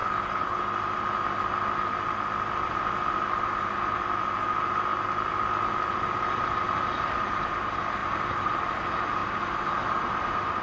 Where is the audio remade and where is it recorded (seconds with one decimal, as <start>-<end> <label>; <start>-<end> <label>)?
0.0-0.6 remade; 0.6-10.6 recorded